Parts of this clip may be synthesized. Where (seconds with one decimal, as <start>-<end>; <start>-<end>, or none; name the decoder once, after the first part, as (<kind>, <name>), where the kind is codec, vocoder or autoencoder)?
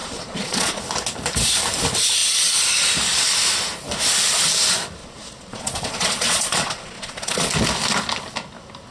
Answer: 0.0-0.8 (vocoder, Vocos); 5.0-7.5